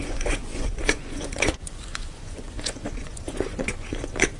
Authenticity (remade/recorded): remade